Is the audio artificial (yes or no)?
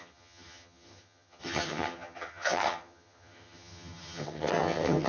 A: yes